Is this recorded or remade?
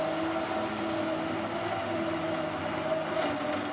recorded